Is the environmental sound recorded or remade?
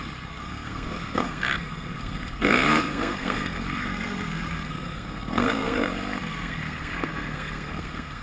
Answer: remade